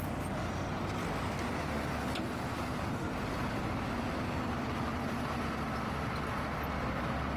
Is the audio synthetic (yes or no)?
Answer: no